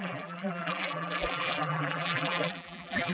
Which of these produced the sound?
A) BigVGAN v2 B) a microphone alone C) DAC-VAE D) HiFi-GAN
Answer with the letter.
A